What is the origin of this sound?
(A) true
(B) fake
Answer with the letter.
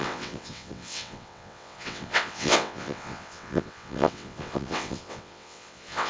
B